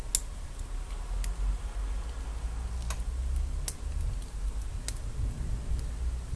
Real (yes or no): yes